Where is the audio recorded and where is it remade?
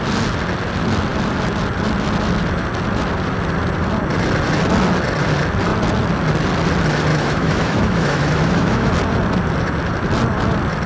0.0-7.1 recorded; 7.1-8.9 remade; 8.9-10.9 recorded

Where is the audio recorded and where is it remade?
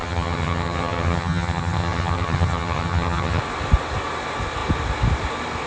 0.0-3.4 remade; 3.4-5.7 recorded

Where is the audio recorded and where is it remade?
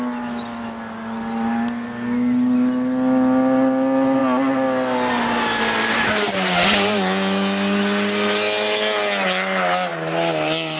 0.0-10.8 recorded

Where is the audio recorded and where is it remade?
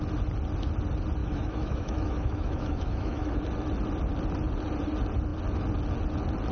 0.0-1.2 recorded; 1.2-3.4 remade; 3.4-6.5 recorded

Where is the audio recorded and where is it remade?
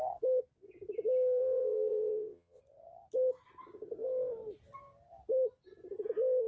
0.0-1.4 recorded; 1.4-2.6 remade; 2.6-6.5 recorded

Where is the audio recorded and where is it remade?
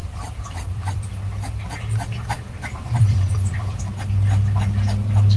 0.0-1.1 remade; 1.1-2.7 recorded; 2.7-3.8 remade; 3.8-5.4 recorded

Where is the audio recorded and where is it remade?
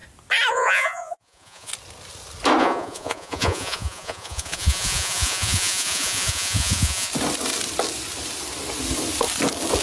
0.0-0.5 recorded; 0.5-1.7 remade; 1.7-2.6 recorded; 2.6-7.1 remade; 7.1-9.8 recorded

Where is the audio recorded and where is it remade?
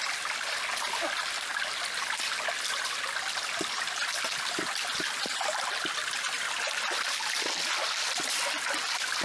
0.0-9.2 recorded